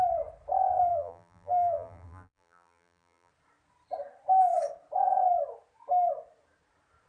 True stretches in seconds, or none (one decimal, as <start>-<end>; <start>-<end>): 0.0-0.9; 3.3-7.1